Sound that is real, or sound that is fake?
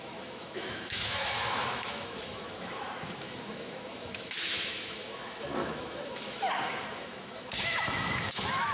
fake